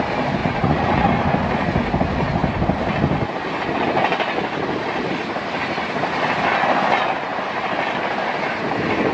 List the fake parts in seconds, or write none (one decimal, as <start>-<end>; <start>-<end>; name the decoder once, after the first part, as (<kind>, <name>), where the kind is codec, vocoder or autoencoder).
0.4-1.1 (vocoder, Vocos)